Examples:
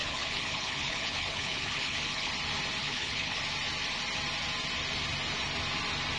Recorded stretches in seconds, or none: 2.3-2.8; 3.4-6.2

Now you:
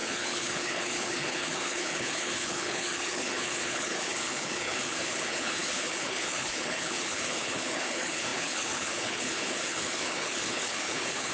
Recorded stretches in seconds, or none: none

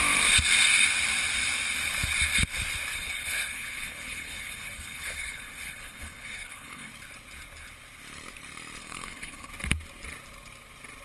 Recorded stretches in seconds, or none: 0.0-2.9; 6.9-8.8; 9.5-11.0

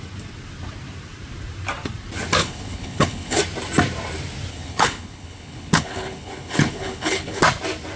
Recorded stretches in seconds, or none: 0.0-2.4; 3.4-4.5; 7.4-8.0

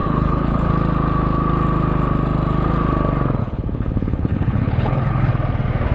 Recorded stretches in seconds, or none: 0.7-3.4; 5.3-5.9

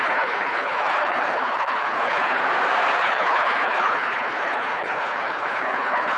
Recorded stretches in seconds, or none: 2.4-3.0